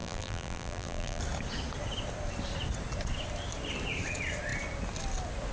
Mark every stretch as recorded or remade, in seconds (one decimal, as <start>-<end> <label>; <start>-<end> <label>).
0.0-1.2 remade; 1.2-5.5 recorded